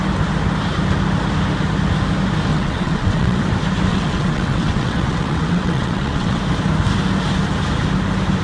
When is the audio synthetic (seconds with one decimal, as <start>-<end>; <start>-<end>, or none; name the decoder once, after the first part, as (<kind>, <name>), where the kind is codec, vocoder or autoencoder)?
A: 2.5-3.4 (vocoder, WaveNeXt); 3.9-6.4